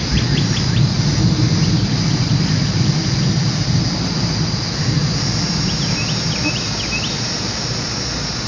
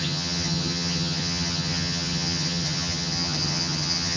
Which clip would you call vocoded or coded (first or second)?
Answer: second